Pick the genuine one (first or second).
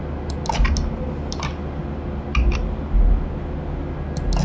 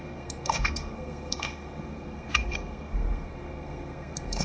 first